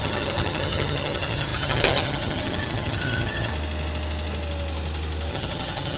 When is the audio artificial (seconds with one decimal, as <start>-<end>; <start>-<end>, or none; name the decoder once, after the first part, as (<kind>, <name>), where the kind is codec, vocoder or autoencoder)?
0.0-3.5 (vocoder, HiFi-GAN); 5.3-6.0